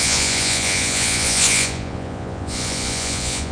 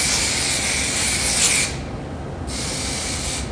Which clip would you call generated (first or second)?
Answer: first